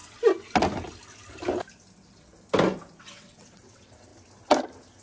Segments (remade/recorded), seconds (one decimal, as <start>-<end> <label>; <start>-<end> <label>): 0.0-3.0 recorded; 3.0-4.1 remade; 4.1-5.0 recorded